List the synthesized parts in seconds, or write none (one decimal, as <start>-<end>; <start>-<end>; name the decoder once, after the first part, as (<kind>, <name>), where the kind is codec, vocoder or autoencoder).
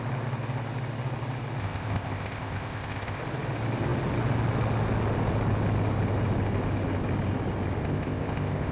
1.6-3.2 (codec, ZipCodec); 7.8-8.7